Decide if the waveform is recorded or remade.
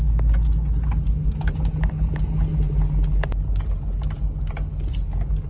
recorded